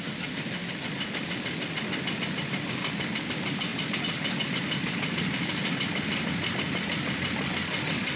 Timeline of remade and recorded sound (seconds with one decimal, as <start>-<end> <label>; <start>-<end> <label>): 0.0-8.2 recorded